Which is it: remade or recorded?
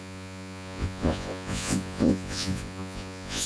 remade